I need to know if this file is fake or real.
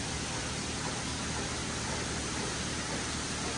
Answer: real